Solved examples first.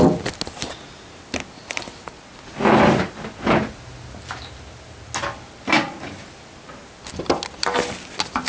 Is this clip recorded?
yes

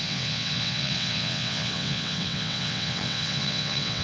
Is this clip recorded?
no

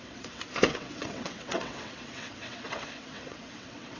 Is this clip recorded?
no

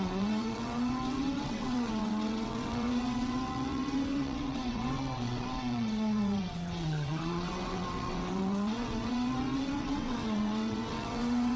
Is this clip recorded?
no